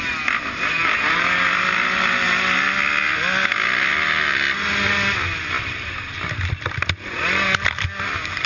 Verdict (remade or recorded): recorded